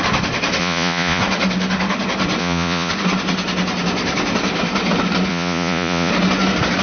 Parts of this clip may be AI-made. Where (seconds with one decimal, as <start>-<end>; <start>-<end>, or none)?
0.6-1.2; 2.4-2.9; 5.3-6.1